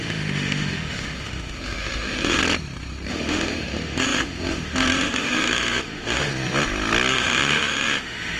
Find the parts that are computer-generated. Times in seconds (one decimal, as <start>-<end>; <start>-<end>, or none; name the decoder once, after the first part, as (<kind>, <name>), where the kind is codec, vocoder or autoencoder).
0.0-2.4 (autoencoder, DAC-VAE); 3.1-6.3; 7.1-8.4